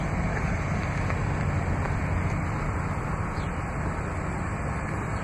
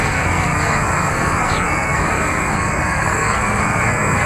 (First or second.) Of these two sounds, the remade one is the second